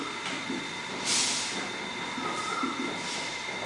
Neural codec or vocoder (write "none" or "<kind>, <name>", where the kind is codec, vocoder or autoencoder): vocoder, BigVGAN v2